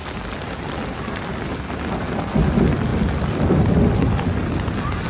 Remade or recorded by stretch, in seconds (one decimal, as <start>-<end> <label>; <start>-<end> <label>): 0.0-5.1 recorded